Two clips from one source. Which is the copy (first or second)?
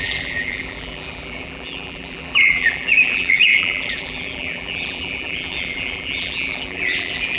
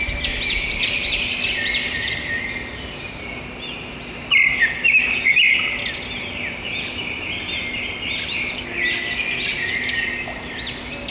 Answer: first